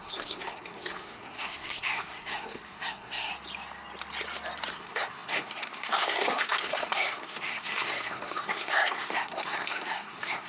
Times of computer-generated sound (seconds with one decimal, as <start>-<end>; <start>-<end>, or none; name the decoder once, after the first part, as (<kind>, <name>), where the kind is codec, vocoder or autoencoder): 0.0-3.3 (codec, SNAC); 4.7-10.5